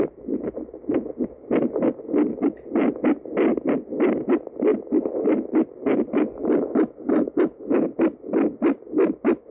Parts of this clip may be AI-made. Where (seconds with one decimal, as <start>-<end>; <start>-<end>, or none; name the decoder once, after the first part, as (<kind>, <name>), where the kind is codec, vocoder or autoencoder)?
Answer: none